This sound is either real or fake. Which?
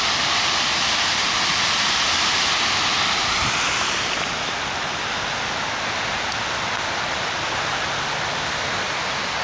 real